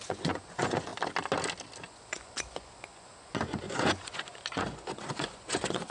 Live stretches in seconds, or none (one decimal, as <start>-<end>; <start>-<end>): 0.9-1.9

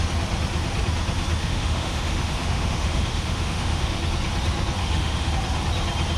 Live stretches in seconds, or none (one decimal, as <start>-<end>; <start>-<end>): 0.0-1.4; 4.0-4.8; 5.3-6.2

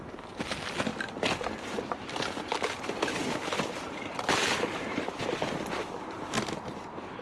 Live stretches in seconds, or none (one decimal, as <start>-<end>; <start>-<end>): 0.0-7.2